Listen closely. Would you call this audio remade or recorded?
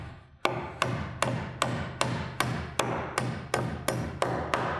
recorded